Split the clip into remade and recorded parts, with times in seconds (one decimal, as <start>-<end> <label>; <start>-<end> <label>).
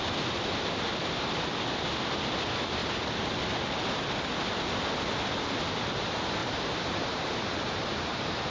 0.0-6.4 recorded; 6.4-8.5 remade